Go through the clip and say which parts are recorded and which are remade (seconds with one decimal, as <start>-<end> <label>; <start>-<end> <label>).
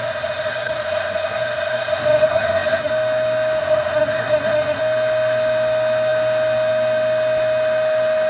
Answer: 0.0-2.9 remade; 2.9-3.6 recorded; 3.6-4.8 remade; 4.8-8.3 recorded